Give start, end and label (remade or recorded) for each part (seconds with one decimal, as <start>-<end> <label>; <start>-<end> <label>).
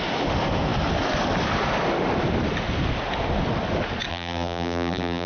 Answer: 0.0-4.1 recorded; 4.1-5.3 remade